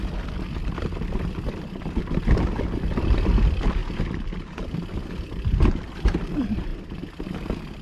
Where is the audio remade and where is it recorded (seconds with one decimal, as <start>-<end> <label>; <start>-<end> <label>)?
0.0-3.8 remade; 3.8-5.0 recorded; 5.0-6.7 remade; 6.7-7.8 recorded